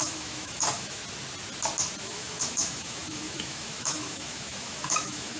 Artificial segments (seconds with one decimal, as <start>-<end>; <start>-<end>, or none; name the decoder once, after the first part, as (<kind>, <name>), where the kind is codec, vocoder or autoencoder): 0.0-1.0 (autoencoder, DAC-VAE); 2.0-5.4